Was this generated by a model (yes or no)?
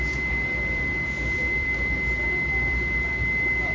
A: yes